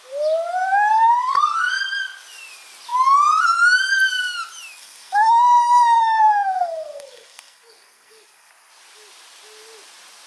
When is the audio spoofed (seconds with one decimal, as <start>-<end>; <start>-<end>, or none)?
1.2-1.8; 4.8-8.5